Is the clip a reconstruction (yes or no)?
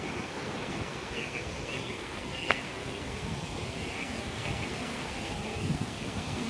yes